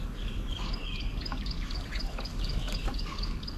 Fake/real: fake